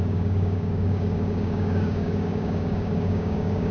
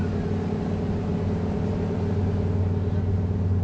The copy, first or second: first